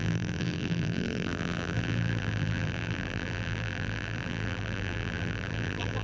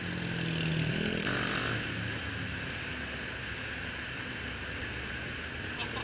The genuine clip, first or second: second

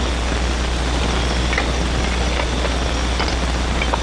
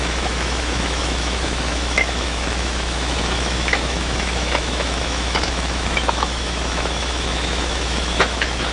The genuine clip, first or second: first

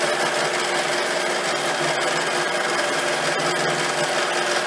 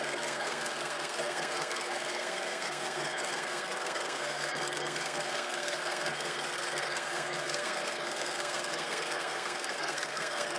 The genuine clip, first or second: first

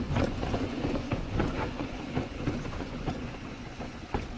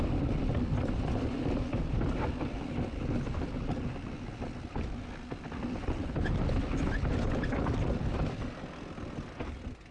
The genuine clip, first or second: second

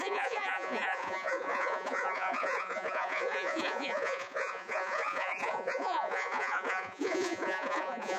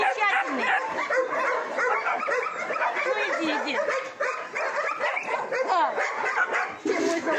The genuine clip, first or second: second